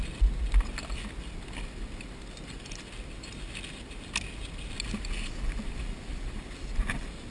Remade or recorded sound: recorded